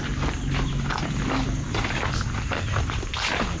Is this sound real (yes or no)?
yes